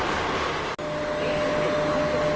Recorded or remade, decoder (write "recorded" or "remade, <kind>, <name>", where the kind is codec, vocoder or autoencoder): recorded